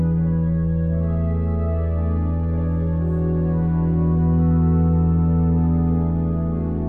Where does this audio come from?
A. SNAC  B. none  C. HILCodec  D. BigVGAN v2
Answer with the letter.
B